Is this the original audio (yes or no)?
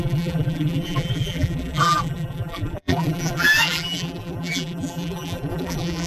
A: no